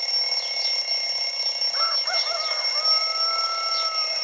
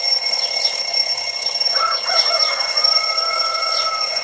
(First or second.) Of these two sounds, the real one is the first